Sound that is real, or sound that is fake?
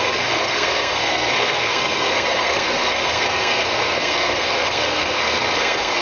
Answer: fake